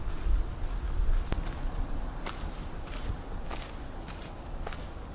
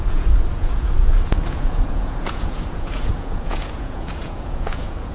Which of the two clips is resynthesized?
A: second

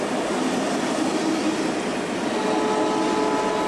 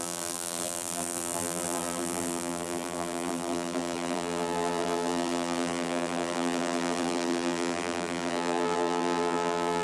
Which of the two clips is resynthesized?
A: second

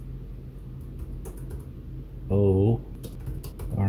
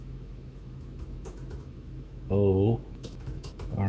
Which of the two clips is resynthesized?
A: second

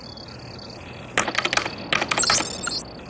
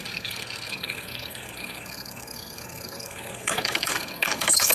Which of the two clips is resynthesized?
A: second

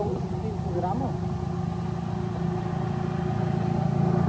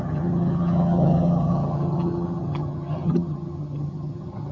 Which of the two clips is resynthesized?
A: second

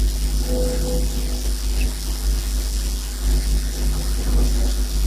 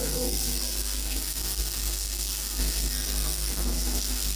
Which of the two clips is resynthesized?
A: second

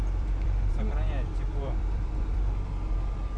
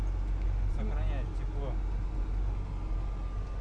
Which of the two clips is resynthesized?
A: first